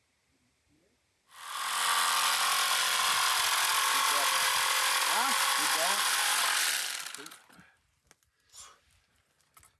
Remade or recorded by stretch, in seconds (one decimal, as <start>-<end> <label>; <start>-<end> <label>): 0.0-9.8 recorded